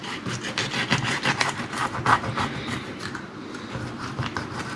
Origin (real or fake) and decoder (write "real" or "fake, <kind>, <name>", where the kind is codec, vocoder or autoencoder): real